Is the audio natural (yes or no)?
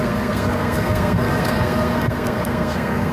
no